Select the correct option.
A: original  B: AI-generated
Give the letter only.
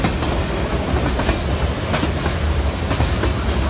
A